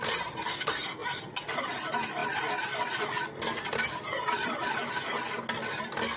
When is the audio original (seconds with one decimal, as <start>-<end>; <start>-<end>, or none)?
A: 0.0-6.2